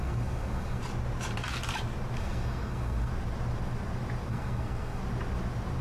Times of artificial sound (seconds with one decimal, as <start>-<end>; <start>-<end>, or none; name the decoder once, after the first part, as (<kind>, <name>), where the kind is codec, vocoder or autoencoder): 0.0-0.8 (codec, SNAC); 2.2-3.1; 4.3-5.0